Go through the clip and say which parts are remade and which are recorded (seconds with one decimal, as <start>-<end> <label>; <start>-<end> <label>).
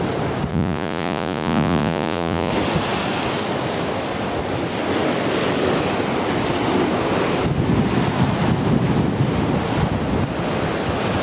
0.0-0.5 recorded; 0.5-2.5 remade; 2.5-11.2 recorded